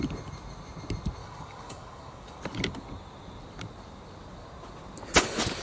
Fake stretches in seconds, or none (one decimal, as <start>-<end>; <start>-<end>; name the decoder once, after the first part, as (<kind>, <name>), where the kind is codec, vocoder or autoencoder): 1.2-2.4 (codec, DAC)